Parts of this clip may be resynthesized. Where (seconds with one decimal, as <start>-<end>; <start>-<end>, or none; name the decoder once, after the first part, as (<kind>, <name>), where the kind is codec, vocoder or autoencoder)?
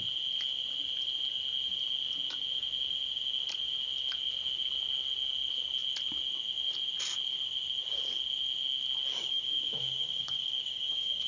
9.1-11.3 (codec, DAC)